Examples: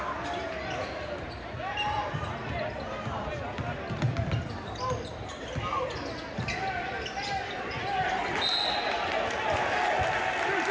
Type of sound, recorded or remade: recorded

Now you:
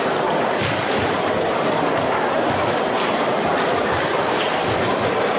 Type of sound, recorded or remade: recorded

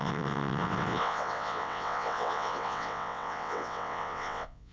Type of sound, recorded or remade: remade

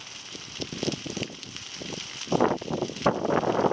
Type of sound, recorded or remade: recorded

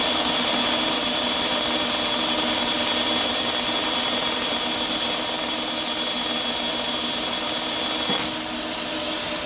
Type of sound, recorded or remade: recorded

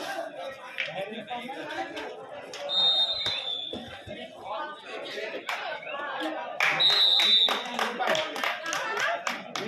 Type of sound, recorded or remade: recorded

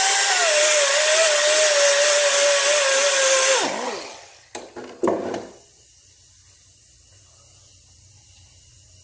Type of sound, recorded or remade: recorded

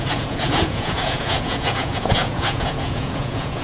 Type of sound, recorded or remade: remade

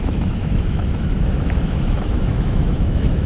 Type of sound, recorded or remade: remade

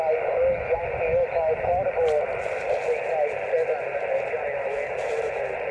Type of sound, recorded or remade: recorded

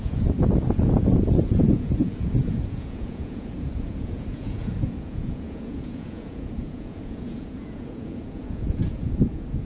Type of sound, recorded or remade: remade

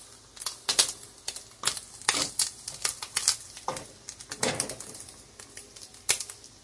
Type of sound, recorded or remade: recorded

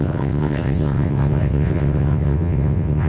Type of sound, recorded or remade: remade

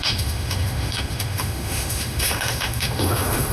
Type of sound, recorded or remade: remade